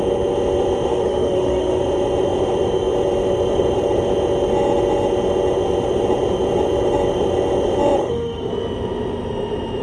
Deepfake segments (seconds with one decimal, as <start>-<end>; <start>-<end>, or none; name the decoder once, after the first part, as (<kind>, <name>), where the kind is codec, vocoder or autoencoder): 0.9-1.8 (autoencoder, DAC-VAE); 8.0-8.5